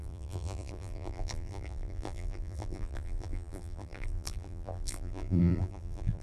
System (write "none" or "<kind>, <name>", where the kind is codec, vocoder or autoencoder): vocoder, BigVGAN v2